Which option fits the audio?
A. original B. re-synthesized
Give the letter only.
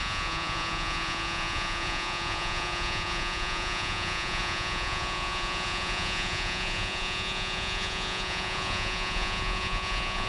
B